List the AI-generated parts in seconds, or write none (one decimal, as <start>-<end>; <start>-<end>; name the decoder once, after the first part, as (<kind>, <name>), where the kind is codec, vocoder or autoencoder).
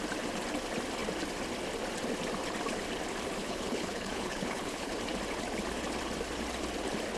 3.4-4.9 (codec, HILCodec)